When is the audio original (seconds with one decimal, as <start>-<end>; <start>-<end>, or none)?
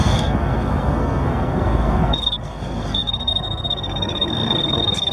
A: none